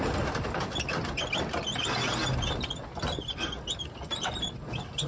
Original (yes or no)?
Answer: yes